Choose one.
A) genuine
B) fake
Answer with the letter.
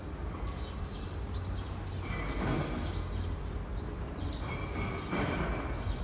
A